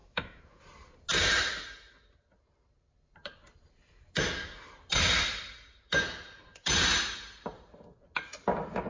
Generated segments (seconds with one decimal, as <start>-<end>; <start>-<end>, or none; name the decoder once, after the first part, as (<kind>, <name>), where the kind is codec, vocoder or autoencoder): 0.0-0.6 (autoencoder, DAC-VAE)